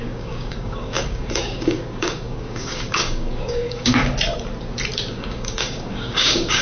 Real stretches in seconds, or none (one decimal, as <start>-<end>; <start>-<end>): 4.0-5.1